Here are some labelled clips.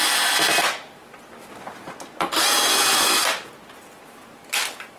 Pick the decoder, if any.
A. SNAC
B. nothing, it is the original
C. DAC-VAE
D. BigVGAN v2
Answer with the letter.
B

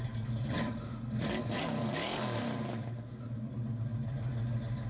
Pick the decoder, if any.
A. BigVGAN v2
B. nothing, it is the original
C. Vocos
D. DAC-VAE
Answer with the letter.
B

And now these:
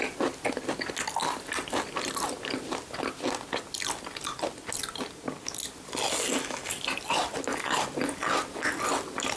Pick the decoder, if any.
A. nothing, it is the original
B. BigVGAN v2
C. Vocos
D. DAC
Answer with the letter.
A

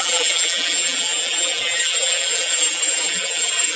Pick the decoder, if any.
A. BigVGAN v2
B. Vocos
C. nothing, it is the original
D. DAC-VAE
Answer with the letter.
A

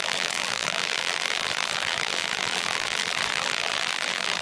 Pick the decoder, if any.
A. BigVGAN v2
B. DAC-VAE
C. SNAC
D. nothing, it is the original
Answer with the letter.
A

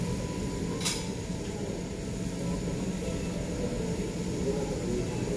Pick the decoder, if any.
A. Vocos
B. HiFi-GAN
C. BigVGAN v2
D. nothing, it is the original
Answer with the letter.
D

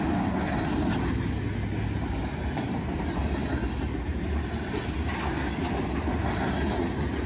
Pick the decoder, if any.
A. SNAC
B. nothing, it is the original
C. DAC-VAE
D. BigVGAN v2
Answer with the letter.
B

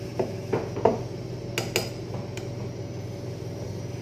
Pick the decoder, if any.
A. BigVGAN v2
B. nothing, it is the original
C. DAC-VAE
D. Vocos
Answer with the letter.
B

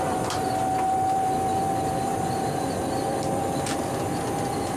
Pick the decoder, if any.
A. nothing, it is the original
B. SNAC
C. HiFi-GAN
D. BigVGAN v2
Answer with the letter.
D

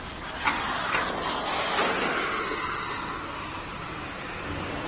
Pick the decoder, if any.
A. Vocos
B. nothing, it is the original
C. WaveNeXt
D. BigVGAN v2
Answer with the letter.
B